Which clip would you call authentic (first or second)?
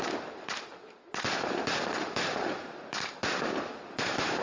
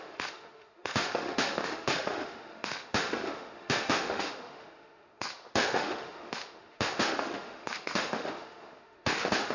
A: first